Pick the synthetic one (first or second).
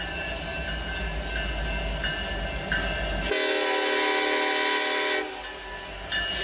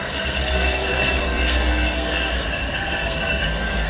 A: second